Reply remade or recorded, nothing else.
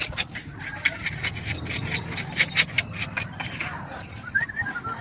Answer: recorded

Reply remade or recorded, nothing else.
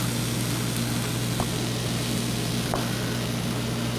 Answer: recorded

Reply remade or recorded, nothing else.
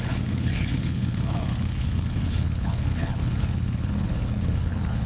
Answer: remade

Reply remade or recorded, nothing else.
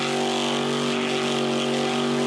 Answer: recorded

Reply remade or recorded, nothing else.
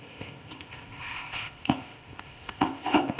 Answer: remade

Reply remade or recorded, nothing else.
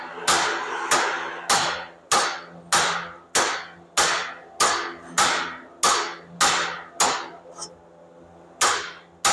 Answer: recorded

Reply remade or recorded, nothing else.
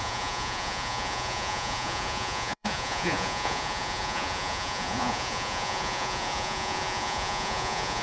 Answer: remade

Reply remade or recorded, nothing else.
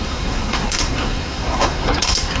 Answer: remade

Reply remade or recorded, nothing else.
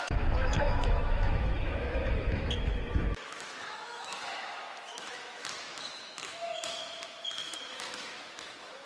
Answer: remade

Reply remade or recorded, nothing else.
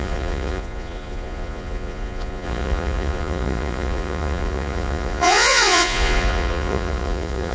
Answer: remade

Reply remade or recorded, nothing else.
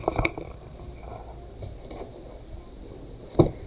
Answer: recorded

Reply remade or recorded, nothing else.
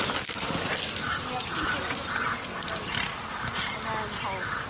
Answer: recorded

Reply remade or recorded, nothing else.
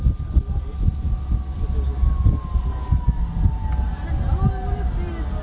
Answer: recorded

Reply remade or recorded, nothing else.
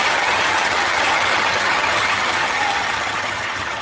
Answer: remade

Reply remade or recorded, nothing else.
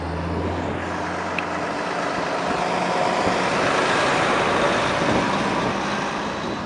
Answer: recorded